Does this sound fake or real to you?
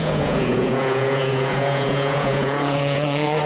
fake